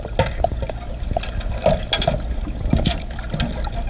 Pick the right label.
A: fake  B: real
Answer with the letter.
B